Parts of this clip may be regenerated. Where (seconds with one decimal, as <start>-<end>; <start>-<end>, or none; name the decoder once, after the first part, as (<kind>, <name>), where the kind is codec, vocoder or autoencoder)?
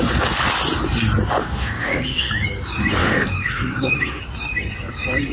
1.4-2.3 (autoencoder, DAC-VAE); 3.0-4.2